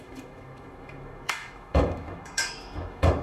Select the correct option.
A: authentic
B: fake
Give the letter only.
B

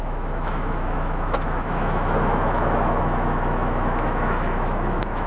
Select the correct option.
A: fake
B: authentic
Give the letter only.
A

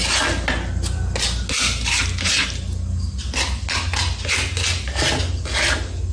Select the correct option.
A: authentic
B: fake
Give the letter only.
A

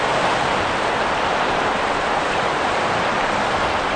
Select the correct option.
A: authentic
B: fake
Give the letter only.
A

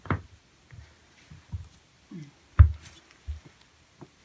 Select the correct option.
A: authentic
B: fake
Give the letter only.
A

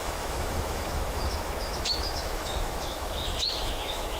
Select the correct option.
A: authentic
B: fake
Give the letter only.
B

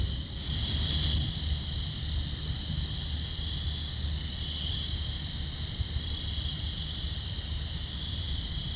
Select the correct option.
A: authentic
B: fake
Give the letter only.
A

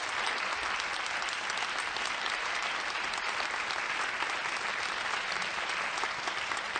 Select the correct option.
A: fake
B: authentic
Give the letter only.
B